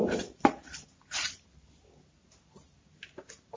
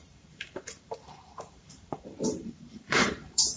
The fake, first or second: second